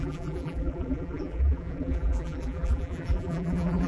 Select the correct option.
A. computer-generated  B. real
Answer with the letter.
A